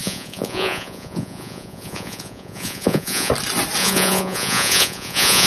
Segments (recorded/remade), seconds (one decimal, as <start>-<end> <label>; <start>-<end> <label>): 0.0-3.3 remade; 3.3-3.8 recorded; 3.8-5.5 remade